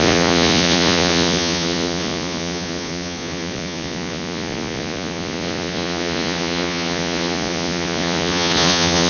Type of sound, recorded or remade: remade